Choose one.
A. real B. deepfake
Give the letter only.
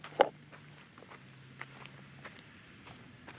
A